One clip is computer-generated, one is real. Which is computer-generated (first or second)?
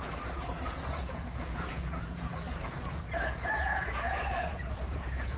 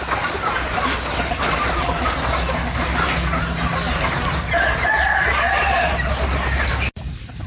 first